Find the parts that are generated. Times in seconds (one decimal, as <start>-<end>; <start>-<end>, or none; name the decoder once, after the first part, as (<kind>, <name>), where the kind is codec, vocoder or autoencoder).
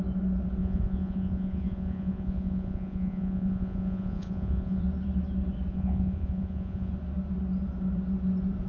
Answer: 0.6-4.8 (vocoder, Vocos); 5.7-6.9